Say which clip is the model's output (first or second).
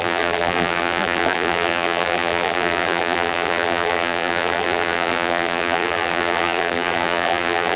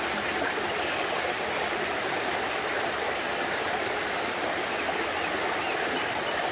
first